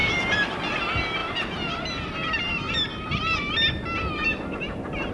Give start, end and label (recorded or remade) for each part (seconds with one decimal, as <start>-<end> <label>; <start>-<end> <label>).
0.0-0.6 remade; 0.6-1.2 recorded; 1.2-3.5 remade; 3.5-5.1 recorded